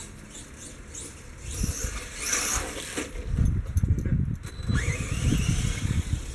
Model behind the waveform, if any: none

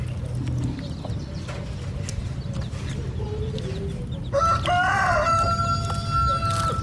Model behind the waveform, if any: none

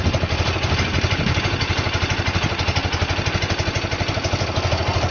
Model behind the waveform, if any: none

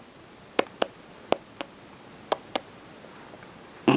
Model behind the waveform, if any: none